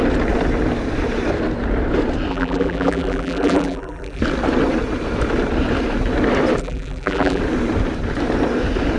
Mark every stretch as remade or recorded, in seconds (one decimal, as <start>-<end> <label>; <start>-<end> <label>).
0.0-2.3 recorded; 2.3-4.2 remade; 4.2-6.6 recorded; 6.6-7.4 remade; 7.4-9.0 recorded